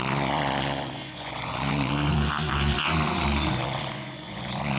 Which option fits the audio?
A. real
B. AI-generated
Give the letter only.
B